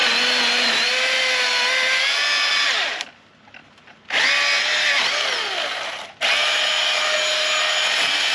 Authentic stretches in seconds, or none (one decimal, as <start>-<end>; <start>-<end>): 0.0-8.3